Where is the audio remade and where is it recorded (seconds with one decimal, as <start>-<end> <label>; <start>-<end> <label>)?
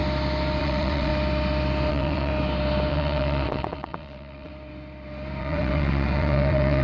0.0-0.6 recorded; 0.6-1.1 remade; 1.1-1.9 recorded; 1.9-2.3 remade; 2.3-2.9 recorded; 2.9-4.5 remade; 4.5-5.4 recorded; 5.4-6.8 remade